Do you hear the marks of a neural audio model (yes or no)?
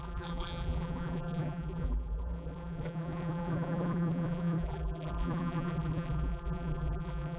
yes